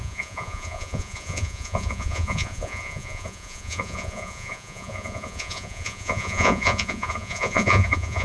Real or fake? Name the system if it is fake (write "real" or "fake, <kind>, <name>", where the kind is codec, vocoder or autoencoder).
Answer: fake, vocoder, Vocos